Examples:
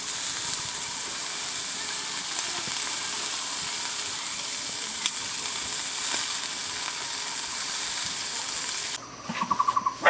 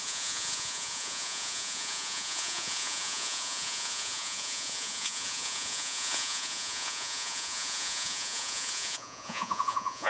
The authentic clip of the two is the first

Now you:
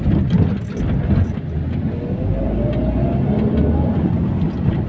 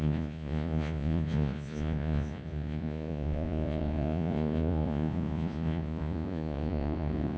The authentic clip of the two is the first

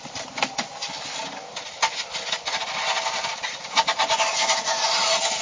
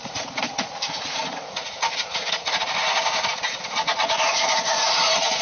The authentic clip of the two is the first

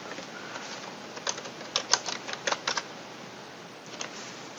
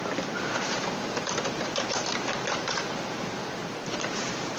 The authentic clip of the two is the first